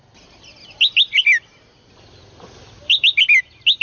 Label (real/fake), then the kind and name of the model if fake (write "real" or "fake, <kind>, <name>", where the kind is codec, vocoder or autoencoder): real